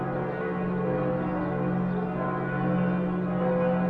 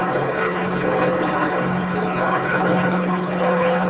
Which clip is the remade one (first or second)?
second